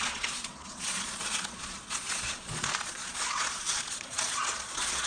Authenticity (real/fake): fake